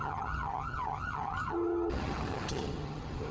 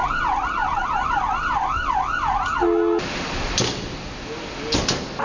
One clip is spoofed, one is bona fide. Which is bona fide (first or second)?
second